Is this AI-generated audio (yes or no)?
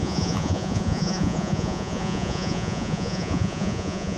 yes